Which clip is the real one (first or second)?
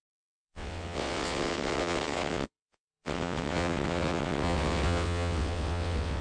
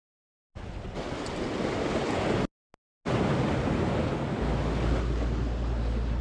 second